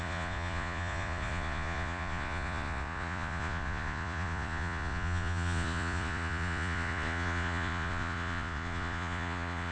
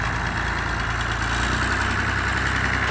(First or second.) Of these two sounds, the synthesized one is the first